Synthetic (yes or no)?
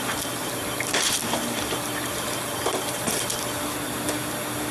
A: no